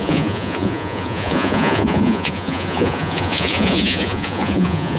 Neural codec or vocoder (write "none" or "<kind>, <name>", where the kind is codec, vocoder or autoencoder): vocoder, Vocos